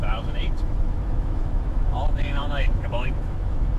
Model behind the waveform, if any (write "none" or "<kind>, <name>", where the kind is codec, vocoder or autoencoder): autoencoder, DAC-VAE